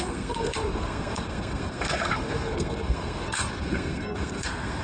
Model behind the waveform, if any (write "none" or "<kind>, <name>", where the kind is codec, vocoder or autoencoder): codec, SNAC